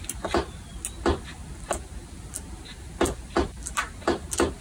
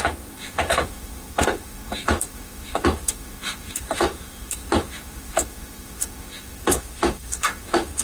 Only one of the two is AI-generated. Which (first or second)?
second